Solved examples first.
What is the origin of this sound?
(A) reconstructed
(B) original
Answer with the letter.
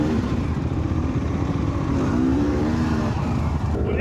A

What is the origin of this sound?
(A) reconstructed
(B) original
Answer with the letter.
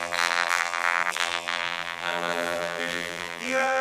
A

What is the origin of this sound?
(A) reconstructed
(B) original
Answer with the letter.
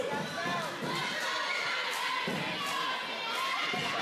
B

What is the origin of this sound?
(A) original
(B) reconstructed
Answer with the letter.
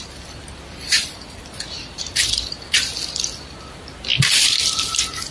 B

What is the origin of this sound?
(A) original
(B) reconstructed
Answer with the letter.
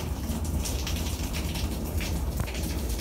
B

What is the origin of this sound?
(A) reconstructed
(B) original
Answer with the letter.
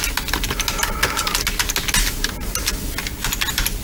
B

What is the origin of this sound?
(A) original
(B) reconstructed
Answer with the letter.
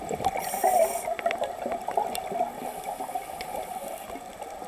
B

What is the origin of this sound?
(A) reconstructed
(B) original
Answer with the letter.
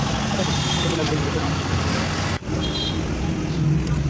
B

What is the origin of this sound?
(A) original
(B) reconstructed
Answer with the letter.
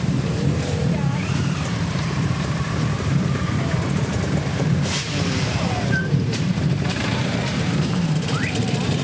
B